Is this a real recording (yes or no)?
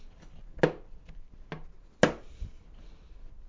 yes